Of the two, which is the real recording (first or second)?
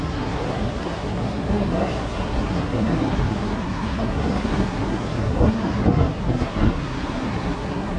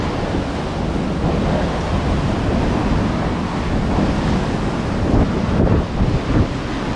second